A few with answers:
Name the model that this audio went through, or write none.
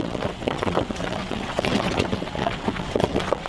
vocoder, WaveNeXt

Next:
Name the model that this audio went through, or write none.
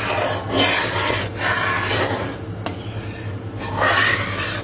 none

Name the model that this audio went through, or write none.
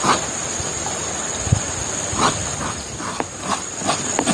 none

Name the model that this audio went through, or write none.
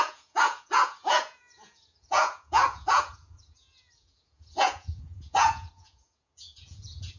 vocoder, Vocos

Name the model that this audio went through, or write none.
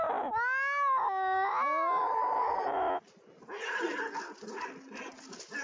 none